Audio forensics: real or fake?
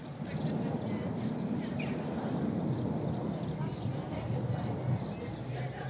real